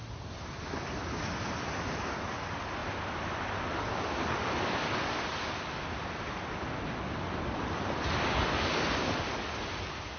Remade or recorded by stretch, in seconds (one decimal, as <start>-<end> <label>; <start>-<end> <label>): 0.0-10.2 recorded